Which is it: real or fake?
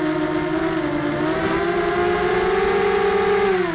real